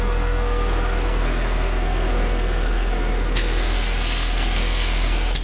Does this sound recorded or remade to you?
remade